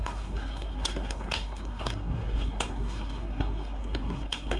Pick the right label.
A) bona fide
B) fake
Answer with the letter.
B